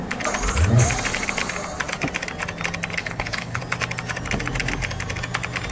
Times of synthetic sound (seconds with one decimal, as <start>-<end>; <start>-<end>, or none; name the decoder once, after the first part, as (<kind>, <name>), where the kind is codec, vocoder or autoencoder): 3.0-3.6 (codec, HILCodec)

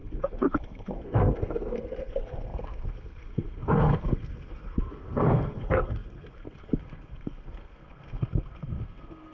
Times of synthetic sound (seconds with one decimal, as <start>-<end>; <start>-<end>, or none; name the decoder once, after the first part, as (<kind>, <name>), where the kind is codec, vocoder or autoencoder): 0.0-9.3 (codec, SNAC)

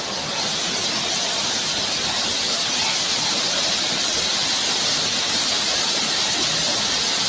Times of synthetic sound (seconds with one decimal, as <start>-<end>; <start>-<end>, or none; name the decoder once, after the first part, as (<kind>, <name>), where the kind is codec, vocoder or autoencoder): none

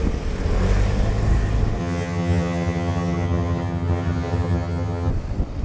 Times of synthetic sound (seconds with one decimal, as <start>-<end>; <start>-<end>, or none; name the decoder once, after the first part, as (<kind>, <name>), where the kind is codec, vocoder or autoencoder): 1.8-5.1 (vocoder, HiFi-GAN)

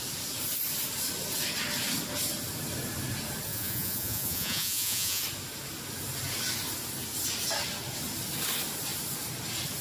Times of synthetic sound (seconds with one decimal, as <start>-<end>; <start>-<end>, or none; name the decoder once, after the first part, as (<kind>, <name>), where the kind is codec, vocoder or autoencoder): 3.5-5.2 (vocoder, Vocos)